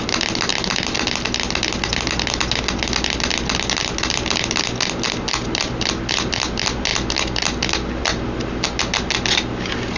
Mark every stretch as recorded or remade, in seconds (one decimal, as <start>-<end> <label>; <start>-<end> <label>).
0.0-10.0 recorded

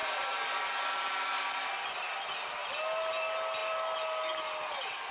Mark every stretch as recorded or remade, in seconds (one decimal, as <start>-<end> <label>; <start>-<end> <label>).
0.0-5.1 recorded

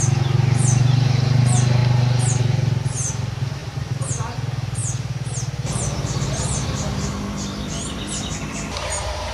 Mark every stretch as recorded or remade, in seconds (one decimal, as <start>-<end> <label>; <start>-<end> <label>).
0.0-0.8 recorded; 0.8-1.4 remade; 1.4-3.6 recorded; 3.6-4.3 remade; 4.3-9.3 recorded

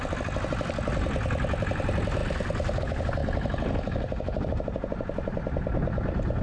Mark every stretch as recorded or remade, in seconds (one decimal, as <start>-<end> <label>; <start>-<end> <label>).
0.0-6.4 recorded

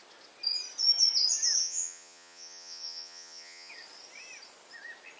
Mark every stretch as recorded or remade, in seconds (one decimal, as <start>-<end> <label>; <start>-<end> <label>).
0.0-1.6 recorded; 1.6-3.7 remade; 3.7-5.2 recorded

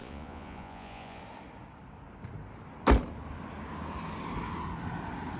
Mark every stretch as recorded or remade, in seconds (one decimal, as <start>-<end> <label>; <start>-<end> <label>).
0.0-1.2 remade; 1.2-5.4 recorded

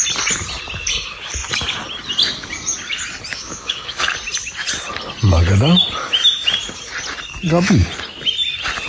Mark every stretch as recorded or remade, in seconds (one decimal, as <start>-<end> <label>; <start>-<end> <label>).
0.0-3.3 recorded; 3.3-4.1 remade; 4.1-8.9 recorded